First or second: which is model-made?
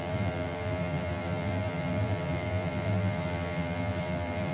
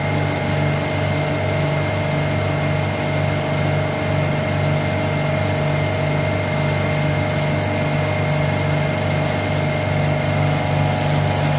first